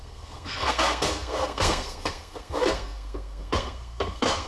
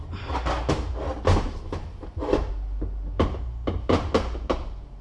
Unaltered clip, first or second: second